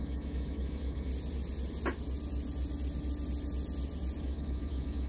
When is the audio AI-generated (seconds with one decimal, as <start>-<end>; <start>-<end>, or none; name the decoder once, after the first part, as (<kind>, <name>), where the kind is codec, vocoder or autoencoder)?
0.0-1.1 (autoencoder, DAC-VAE); 4.2-5.1